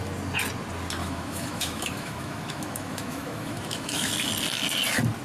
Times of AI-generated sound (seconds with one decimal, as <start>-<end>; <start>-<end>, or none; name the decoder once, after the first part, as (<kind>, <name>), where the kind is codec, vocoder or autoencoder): 1.0-4.1 (autoencoder, DAC-VAE)